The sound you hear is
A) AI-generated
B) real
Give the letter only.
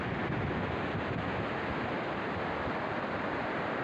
B